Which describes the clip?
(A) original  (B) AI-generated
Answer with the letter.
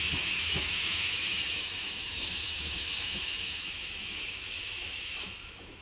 B